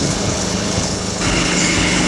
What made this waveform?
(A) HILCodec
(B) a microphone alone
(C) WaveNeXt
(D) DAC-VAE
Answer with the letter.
A